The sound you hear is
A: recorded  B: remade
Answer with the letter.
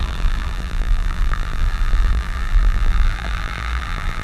B